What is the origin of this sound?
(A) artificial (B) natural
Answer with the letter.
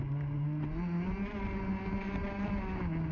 B